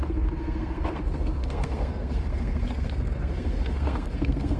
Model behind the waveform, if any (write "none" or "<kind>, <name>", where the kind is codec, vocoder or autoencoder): codec, SNAC